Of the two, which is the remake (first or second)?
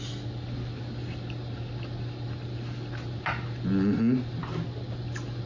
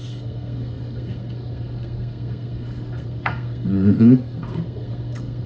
second